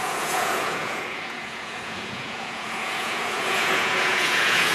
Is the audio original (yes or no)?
no